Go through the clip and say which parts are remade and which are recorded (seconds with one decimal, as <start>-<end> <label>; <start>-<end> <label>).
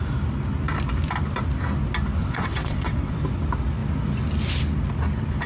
0.0-2.2 recorded; 2.2-3.2 remade; 3.2-5.5 recorded